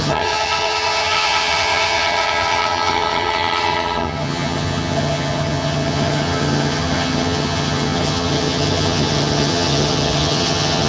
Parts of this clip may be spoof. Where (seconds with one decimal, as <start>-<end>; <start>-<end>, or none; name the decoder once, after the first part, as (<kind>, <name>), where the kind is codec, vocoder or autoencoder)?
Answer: 0.0-10.9 (vocoder, HiFi-GAN)